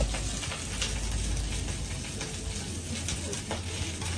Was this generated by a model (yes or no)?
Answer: no